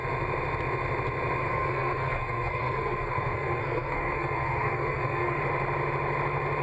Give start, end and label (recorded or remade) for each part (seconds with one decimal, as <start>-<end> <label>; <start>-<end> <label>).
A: 0.0-1.4 recorded; 1.4-5.4 remade; 5.4-6.6 recorded